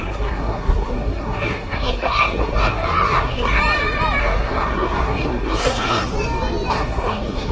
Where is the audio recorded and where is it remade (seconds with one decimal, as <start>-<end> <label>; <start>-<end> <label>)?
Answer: 0.0-3.6 remade; 3.6-4.2 recorded; 4.2-6.1 remade; 6.1-6.7 recorded; 6.7-7.5 remade

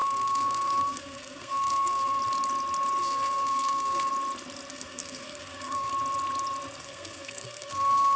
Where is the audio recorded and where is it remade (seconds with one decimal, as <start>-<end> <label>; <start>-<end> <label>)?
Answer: 0.0-2.2 remade; 2.2-3.0 recorded; 3.0-4.1 remade; 4.1-4.7 recorded; 4.7-5.9 remade; 5.9-6.8 recorded; 6.8-8.2 remade

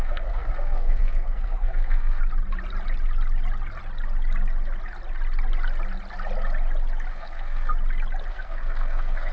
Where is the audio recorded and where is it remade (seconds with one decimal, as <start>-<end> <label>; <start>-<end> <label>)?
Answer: 0.0-2.2 remade; 2.2-7.1 recorded; 7.1-7.7 remade; 7.7-8.3 recorded; 8.3-9.3 remade